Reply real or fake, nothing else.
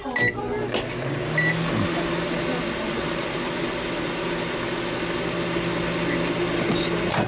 real